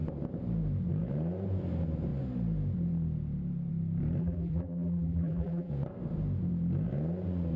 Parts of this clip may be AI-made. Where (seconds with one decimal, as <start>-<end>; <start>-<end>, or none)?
4.2-5.7